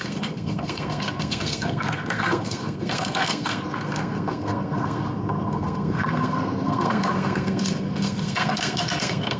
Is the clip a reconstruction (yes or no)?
yes